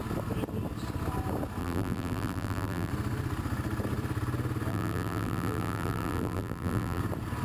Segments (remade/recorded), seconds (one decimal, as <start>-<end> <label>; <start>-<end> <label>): 0.0-1.6 recorded; 1.6-2.9 remade; 2.9-4.7 recorded; 4.7-7.0 remade; 7.0-7.4 recorded